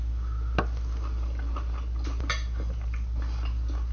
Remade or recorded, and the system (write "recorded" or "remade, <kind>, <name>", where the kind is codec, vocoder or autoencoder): recorded